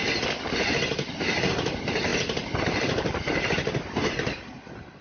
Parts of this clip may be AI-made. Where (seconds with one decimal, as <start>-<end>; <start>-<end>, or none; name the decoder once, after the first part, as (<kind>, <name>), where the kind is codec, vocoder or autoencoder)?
none